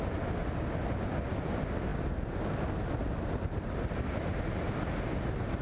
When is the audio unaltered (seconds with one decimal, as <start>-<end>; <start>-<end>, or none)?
0.0-5.6